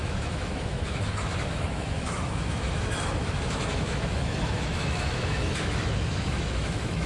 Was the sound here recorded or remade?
remade